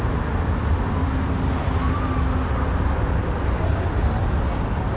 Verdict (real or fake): real